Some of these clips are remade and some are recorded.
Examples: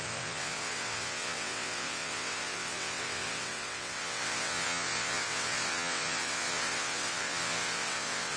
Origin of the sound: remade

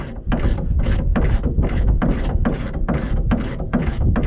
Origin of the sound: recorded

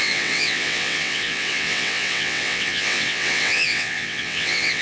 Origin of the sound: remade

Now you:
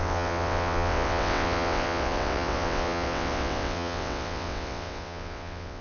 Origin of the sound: remade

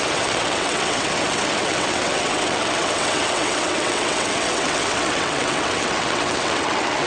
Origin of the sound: remade